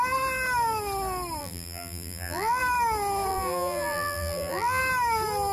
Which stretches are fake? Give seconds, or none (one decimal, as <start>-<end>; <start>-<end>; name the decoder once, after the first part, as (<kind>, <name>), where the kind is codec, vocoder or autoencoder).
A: 1.4-2.6 (vocoder, BigVGAN v2); 3.3-4.8